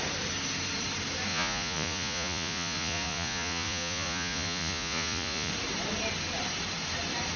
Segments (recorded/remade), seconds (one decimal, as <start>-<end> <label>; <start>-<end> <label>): 0.0-1.3 recorded; 1.3-5.5 remade; 5.5-7.4 recorded